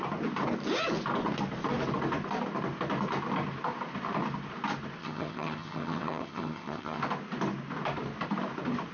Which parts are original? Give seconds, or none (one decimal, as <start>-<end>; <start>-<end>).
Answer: 0.0-5.0; 7.0-8.9